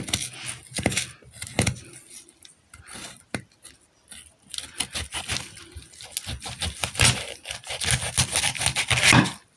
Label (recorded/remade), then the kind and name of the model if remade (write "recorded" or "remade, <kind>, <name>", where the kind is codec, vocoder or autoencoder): recorded